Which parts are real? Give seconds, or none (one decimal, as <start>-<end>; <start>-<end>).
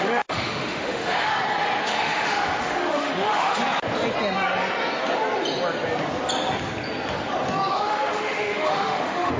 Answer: 1.3-1.8; 3.6-7.7